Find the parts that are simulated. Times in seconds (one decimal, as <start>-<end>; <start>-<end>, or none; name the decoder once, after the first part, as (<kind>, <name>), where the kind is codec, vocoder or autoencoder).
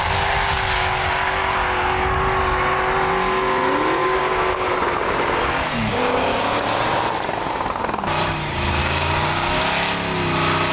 4.0-4.7 (codec, DAC); 5.9-6.6; 8.8-9.6